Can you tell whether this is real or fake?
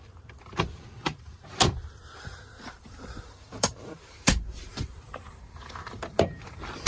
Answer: fake